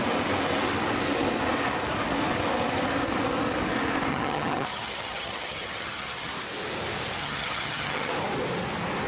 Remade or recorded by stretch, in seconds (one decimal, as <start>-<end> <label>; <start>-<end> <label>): 0.0-4.1 recorded; 4.1-6.3 remade; 6.3-7.2 recorded; 7.2-8.1 remade; 8.1-9.1 recorded